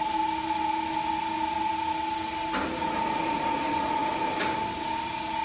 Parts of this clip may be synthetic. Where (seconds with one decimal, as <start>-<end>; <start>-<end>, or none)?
none